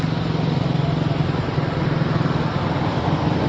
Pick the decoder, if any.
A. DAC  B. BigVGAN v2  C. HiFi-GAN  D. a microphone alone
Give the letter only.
D